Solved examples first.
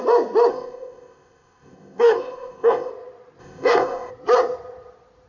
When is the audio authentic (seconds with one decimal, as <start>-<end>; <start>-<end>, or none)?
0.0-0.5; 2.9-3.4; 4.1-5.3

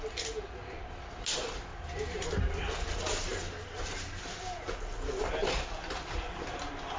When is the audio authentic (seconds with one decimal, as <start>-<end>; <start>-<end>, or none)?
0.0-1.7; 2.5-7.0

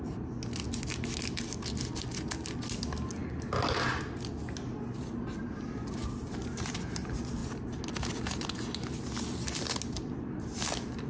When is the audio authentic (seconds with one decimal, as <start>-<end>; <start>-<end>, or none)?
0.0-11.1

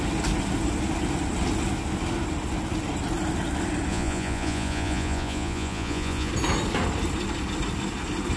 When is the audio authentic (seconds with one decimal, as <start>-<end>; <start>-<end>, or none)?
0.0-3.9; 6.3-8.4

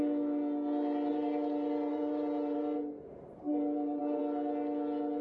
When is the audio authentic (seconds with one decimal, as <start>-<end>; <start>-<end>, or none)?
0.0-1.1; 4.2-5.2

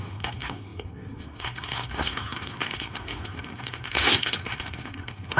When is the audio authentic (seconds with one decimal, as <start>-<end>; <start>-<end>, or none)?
none

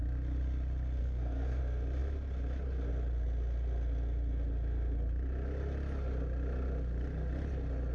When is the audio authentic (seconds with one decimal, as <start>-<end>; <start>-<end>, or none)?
0.0-1.0; 1.6-7.9